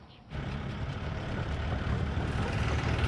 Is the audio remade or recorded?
remade